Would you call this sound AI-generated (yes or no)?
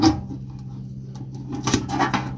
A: no